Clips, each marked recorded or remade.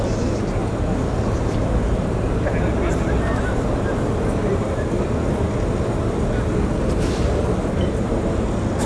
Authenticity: recorded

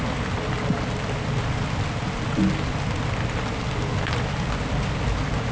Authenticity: recorded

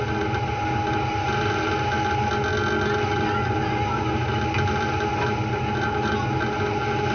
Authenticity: recorded